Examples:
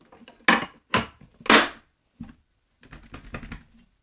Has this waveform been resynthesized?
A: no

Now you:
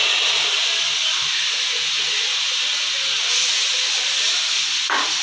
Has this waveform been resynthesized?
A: no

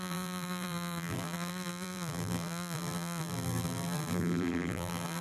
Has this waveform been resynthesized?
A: yes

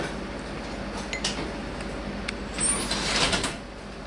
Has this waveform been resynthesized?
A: no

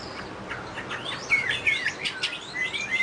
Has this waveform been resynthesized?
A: no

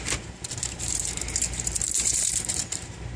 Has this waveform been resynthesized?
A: yes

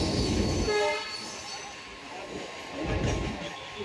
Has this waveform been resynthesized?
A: no